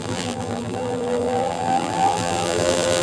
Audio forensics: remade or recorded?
remade